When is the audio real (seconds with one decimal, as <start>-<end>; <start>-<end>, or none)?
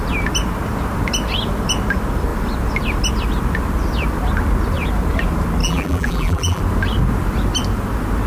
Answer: 0.0-5.6; 6.6-8.3